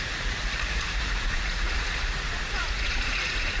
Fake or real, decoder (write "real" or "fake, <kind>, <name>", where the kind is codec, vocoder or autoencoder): fake, vocoder, Vocos